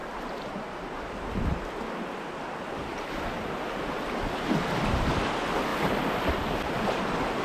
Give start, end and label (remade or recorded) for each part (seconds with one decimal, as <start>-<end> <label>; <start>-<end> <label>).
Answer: 0.0-2.9 recorded; 2.9-4.2 remade; 4.2-7.4 recorded